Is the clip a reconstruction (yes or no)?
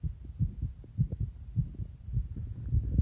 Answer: no